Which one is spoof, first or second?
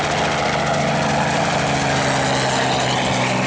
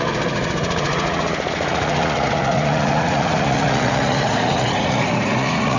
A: second